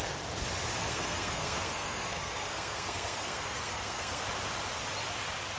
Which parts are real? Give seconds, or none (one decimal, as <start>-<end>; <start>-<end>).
0.0-0.8; 4.2-5.6